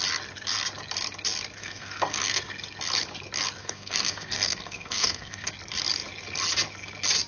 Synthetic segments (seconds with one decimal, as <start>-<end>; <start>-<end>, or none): 1.6-2.4; 3.6-5.5